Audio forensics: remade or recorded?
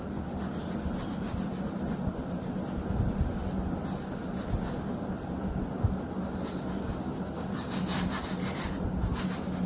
recorded